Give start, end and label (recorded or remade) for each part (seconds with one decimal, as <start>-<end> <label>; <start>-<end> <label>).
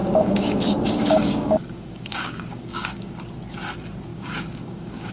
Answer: 0.0-3.1 remade; 3.1-4.1 recorded; 4.1-5.1 remade